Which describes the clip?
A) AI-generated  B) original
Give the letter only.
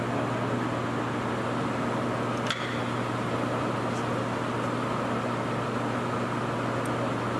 B